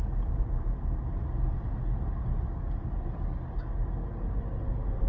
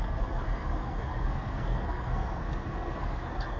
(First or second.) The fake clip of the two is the second